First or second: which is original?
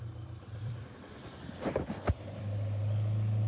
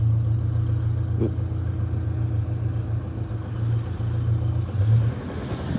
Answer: second